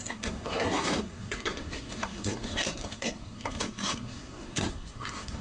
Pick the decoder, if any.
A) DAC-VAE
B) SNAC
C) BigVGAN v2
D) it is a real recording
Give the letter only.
B